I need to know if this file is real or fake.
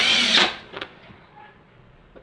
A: fake